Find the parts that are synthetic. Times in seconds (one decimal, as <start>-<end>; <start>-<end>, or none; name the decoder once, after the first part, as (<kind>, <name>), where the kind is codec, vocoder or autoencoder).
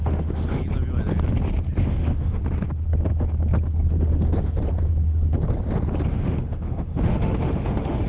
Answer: 0.0-0.6 (autoencoder, DAC-VAE); 1.8-2.4; 6.1-8.1